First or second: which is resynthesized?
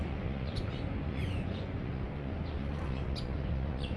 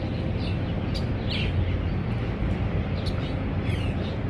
first